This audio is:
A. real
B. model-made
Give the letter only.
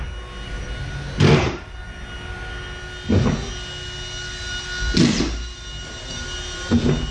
A